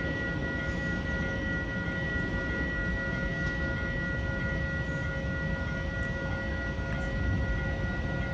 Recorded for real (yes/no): yes